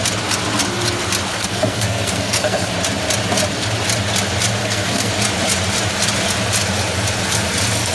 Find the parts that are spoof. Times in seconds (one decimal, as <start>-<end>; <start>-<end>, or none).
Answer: 1.3-2.7; 4.6-5.1